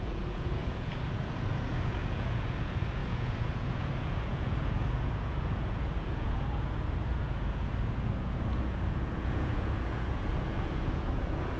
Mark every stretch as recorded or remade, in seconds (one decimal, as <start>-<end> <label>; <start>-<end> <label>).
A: 0.0-11.6 remade